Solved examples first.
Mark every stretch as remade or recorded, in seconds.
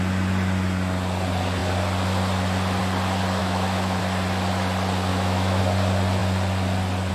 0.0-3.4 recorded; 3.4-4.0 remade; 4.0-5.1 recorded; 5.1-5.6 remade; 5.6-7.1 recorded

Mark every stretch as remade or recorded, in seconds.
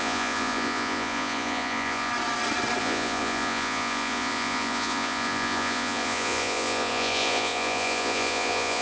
0.0-2.1 remade; 2.1-2.8 recorded; 2.8-8.8 remade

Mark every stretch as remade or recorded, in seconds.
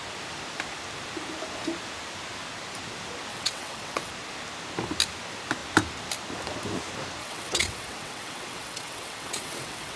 0.0-3.3 recorded; 3.3-4.1 remade; 4.1-7.2 recorded; 7.2-10.0 remade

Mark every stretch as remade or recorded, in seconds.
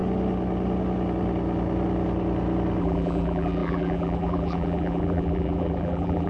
0.0-2.8 recorded; 2.8-6.3 remade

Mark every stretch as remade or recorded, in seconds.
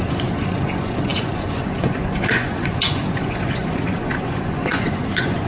0.0-5.5 remade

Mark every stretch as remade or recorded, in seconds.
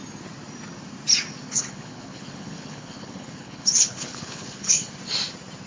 0.0-1.5 recorded; 1.5-4.9 remade; 4.9-5.7 recorded